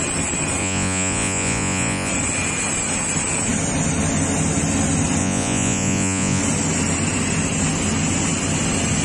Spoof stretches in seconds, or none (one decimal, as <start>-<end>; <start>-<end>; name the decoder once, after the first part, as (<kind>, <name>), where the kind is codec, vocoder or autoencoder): 0.6-2.1 (vocoder, Vocos); 5.2-6.4